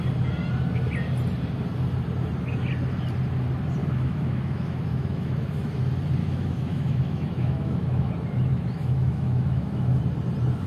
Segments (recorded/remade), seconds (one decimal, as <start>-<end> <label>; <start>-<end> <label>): 0.0-3.8 recorded; 3.8-5.8 remade; 5.8-6.2 recorded; 6.2-8.1 remade; 8.1-8.5 recorded; 8.5-10.0 remade; 10.0-10.7 recorded